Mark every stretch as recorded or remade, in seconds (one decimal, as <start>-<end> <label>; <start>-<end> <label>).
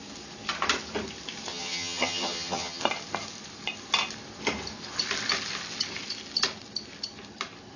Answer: 0.0-1.5 recorded; 1.5-2.8 remade; 2.8-7.8 recorded